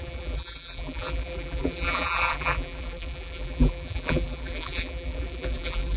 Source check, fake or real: fake